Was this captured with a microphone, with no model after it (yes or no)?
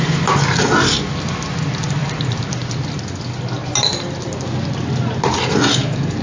yes